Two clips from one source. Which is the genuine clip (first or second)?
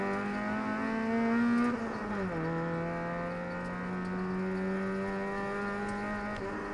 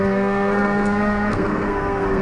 first